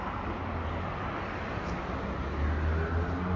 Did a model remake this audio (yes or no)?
no